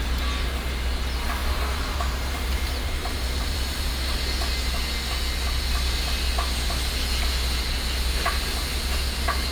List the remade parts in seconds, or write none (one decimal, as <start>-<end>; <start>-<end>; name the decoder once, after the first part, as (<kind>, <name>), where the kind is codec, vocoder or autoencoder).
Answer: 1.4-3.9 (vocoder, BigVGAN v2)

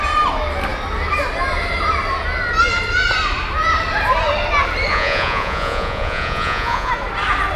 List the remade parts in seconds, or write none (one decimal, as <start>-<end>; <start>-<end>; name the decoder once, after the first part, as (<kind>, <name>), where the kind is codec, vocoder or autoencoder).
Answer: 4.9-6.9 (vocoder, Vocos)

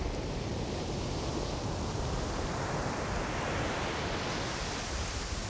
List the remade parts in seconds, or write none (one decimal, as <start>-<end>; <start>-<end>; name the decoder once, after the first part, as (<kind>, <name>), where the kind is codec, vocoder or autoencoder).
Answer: 0.5-1.7 (vocoder, BigVGAN v2)

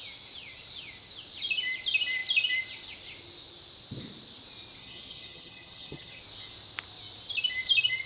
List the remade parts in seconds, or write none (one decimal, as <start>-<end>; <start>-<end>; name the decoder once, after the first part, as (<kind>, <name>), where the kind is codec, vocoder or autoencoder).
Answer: 4.8-6.2 (vocoder, HiFi-GAN)

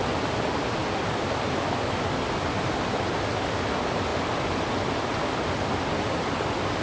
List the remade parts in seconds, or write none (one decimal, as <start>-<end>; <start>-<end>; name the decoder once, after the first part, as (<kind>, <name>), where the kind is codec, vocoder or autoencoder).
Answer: 0.8-3.0 (vocoder, BigVGAN v2)

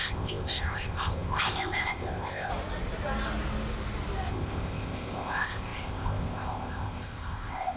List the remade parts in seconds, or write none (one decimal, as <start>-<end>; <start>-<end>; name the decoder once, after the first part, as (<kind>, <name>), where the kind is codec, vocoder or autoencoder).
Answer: 0.0-2.5 (codec, ZipCodec); 4.3-7.8